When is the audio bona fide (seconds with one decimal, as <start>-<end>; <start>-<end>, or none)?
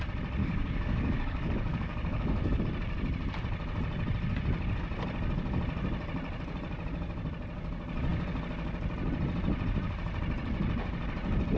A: 0.0-0.4; 2.6-11.6